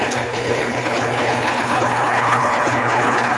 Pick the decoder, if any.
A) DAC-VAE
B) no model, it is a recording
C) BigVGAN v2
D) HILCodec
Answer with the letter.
D